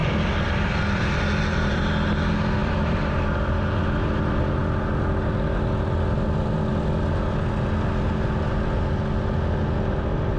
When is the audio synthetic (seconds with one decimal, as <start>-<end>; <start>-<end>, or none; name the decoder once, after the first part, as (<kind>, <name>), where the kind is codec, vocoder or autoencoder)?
0.0-1.2 (vocoder, BigVGAN v2); 2.6-3.8